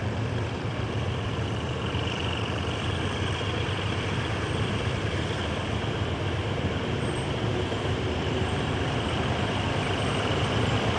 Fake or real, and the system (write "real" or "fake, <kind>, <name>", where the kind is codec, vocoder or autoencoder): fake, vocoder, BigVGAN v2